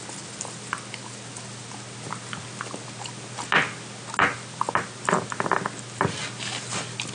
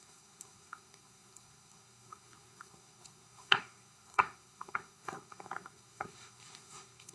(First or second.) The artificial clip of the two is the second